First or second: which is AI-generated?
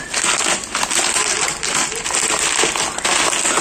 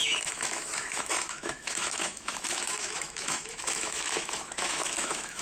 second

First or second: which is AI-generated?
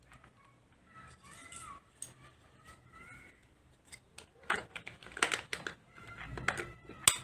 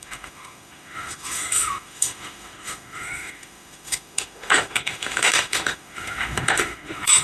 second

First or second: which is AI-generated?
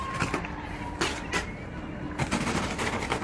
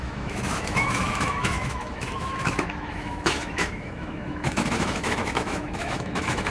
second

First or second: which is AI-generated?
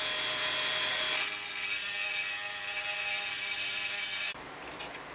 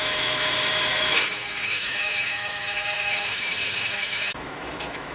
second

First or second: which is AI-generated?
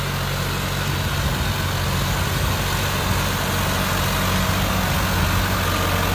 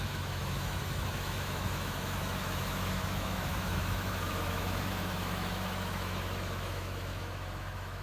second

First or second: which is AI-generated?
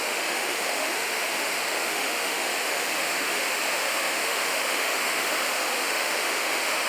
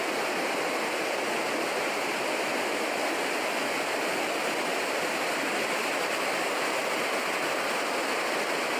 first